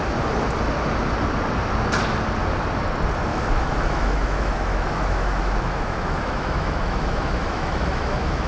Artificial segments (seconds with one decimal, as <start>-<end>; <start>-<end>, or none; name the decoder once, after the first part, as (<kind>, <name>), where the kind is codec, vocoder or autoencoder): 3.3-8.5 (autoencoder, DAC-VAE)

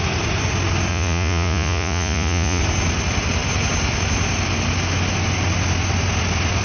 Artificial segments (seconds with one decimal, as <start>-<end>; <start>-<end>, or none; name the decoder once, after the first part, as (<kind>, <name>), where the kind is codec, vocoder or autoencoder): 0.9-2.6 (vocoder, Vocos)

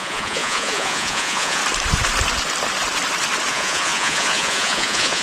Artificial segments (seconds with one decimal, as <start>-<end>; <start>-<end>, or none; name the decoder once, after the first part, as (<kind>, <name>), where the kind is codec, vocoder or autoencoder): 0.0-1.6 (vocoder, Vocos); 3.5-5.2